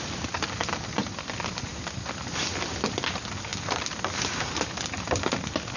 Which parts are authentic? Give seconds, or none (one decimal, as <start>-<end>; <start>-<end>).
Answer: 0.0-5.8